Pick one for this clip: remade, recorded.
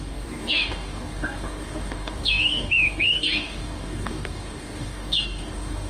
remade